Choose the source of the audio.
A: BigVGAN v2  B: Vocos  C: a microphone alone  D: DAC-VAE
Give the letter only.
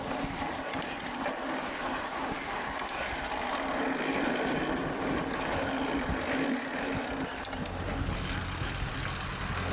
C